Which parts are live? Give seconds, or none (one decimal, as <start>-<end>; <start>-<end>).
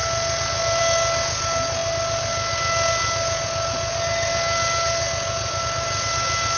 0.0-6.6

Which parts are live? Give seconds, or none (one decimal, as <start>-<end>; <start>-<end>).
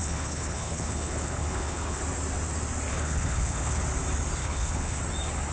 2.0-2.9; 3.8-4.4; 5.0-5.5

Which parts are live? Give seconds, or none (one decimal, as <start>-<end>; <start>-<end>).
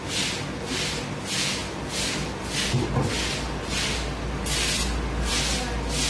0.0-6.1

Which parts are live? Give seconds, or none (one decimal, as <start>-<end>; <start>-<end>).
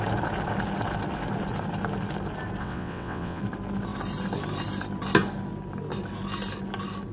0.0-2.6; 3.4-7.1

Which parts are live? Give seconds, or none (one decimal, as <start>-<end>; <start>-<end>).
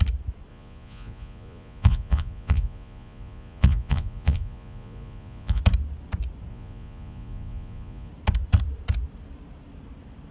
0.0-0.5; 5.6-6.5; 8.1-10.3